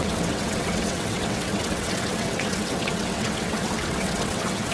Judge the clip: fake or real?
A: fake